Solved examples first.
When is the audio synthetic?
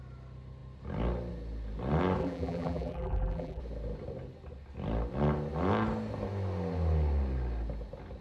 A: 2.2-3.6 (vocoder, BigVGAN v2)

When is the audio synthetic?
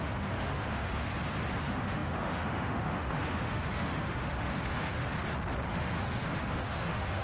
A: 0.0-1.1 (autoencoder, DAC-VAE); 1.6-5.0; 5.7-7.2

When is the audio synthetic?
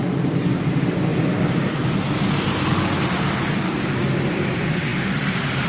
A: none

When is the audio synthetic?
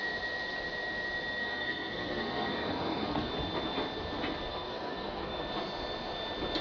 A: 1.4-3.3 (codec, SNAC); 4.5-5.4